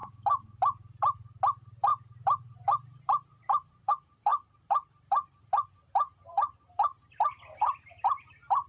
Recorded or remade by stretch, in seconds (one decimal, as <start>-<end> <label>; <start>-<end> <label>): 0.0-0.6 remade; 0.6-1.9 recorded; 1.9-3.9 remade; 3.9-4.3 recorded; 4.3-6.6 remade; 6.6-8.7 recorded